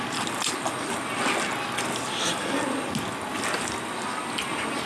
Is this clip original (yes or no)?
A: yes